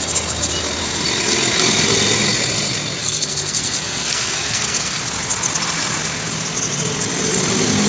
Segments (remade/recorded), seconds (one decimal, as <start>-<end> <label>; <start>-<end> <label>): 0.0-3.0 recorded; 3.0-5.0 remade; 5.0-7.9 recorded